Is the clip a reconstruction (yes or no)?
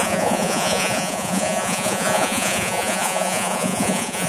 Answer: yes